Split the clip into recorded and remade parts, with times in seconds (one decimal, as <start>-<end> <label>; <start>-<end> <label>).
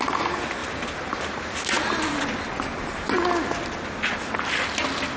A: 0.0-5.2 recorded